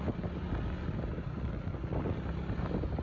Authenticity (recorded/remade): recorded